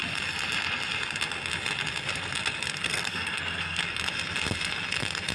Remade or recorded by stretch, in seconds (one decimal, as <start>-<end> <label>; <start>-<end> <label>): 0.0-2.8 recorded; 2.8-3.8 remade; 3.8-5.3 recorded

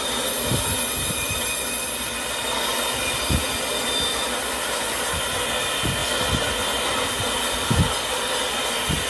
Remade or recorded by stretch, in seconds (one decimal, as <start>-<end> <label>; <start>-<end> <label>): 0.0-9.1 recorded

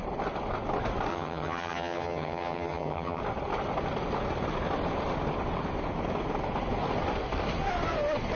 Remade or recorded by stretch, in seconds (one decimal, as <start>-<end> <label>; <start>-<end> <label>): 0.0-1.1 recorded; 1.1-3.2 remade; 3.2-8.3 recorded

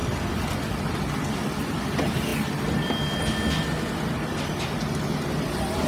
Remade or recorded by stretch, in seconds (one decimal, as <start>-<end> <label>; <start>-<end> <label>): 0.0-5.9 recorded